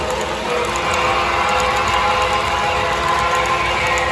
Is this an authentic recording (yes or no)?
yes